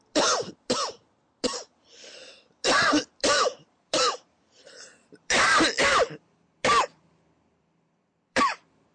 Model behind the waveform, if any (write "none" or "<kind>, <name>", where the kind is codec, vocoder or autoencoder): vocoder, BigVGAN v2